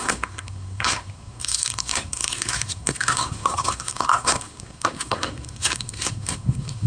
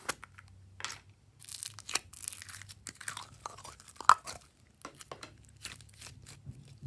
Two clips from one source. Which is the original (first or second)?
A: second